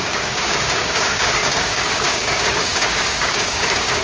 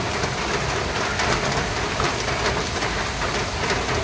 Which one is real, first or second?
second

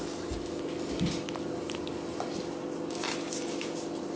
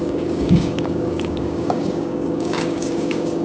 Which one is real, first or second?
first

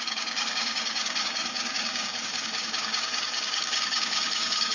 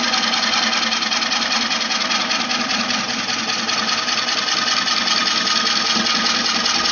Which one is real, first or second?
second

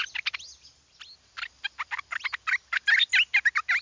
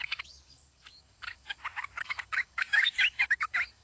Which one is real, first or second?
first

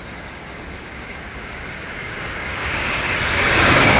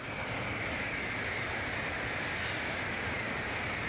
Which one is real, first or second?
second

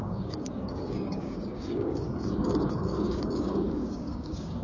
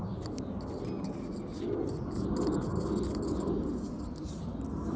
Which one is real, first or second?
second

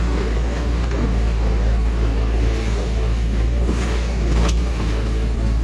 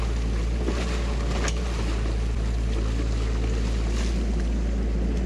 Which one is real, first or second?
second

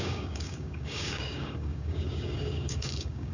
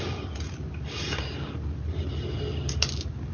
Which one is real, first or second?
second